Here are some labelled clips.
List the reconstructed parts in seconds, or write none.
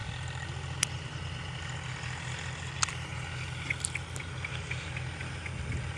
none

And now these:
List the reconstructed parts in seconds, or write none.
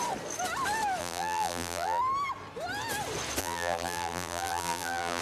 1.0-2.0 (vocoder, BigVGAN v2); 3.4-5.2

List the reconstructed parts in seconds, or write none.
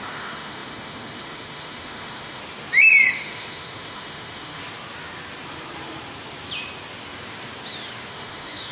0.0-2.4 (autoencoder, DAC-VAE); 3.1-4.6; 8.1-8.7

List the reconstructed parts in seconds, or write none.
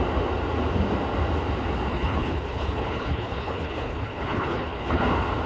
1.9-5.0 (codec, HILCodec)